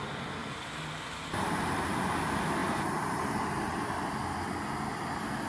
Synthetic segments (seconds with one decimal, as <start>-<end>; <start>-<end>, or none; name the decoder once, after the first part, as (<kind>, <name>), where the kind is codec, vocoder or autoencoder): 0.4-1.9 (vocoder, BigVGAN v2); 2.6-4.2